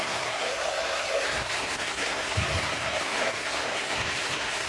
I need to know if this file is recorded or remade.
remade